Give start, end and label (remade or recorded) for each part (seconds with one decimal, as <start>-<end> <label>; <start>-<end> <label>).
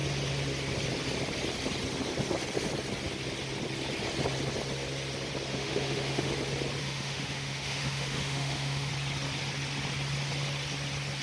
0.0-5.5 recorded; 5.5-6.3 remade; 6.3-6.8 recorded; 6.8-8.9 remade; 8.9-11.2 recorded